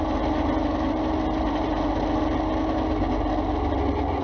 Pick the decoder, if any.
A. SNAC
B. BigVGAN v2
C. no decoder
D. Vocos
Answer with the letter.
C